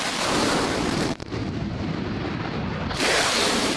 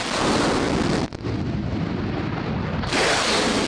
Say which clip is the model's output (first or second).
first